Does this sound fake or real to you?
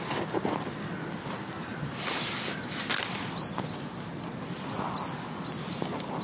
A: real